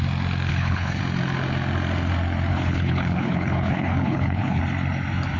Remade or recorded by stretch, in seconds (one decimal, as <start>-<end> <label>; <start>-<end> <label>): 0.0-0.5 recorded; 0.5-1.0 remade; 1.0-2.5 recorded; 2.5-4.6 remade; 4.6-5.4 recorded